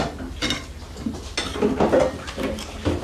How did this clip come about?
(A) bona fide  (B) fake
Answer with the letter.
A